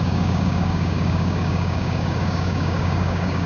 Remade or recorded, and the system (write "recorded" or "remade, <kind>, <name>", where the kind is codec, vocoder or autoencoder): remade, codec, DAC